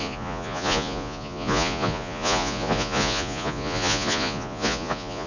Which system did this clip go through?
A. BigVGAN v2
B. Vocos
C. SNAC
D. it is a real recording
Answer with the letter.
B